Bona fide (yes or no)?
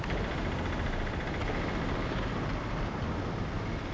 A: yes